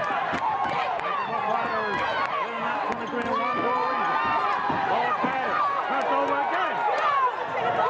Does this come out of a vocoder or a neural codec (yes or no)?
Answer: no